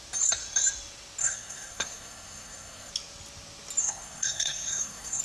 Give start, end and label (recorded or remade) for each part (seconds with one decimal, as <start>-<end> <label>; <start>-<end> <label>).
0.0-1.2 recorded; 1.2-2.9 remade; 2.9-3.8 recorded; 3.8-5.2 remade